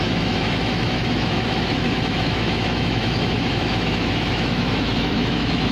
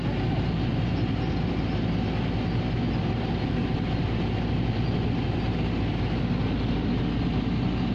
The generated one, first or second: first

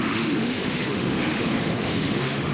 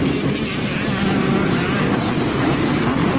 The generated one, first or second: first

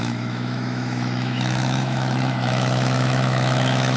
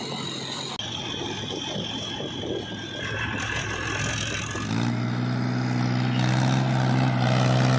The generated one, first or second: first